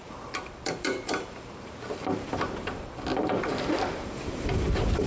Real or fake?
fake